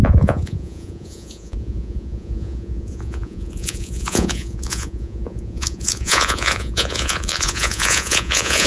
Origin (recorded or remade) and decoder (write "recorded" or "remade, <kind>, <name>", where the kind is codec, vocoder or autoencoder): remade, vocoder, Vocos